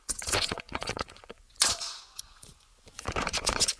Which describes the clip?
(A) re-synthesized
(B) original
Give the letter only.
A